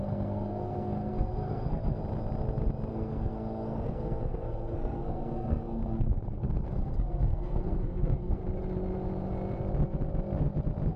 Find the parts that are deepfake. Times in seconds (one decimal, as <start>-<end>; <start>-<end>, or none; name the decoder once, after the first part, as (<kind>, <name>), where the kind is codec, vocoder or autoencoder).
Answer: 0.0-2.0 (codec, SNAC); 2.9-8.4

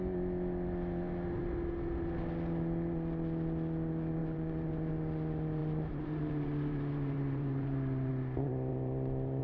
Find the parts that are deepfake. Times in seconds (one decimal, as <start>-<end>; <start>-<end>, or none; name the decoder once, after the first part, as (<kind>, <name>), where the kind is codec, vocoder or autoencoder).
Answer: 4.2-4.9 (vocoder, BigVGAN v2); 5.6-8.1; 8.7-9.4

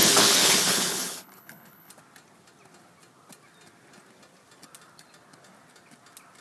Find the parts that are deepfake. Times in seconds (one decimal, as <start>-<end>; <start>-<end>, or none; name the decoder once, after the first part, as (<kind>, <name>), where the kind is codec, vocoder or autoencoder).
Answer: 0.0-1.9 (codec, HILCodec)

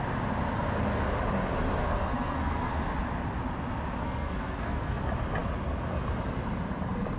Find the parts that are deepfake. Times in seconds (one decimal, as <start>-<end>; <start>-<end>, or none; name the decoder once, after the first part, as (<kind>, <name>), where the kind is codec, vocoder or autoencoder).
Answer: 1.8-2.7 (codec, SNAC); 4.0-5.0